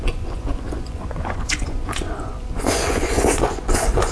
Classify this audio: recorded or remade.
remade